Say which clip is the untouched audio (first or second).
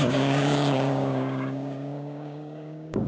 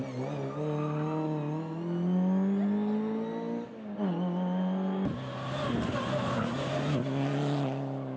second